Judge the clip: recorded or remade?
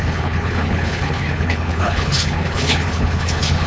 remade